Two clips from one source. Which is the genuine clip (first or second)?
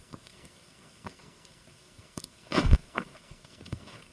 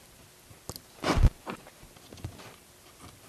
second